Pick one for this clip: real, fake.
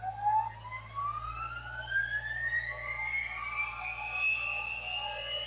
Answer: real